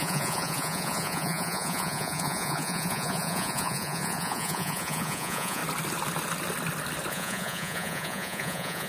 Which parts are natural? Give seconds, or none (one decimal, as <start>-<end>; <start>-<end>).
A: 5.6-7.1